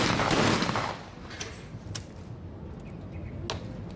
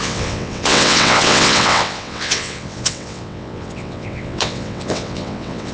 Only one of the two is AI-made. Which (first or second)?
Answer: second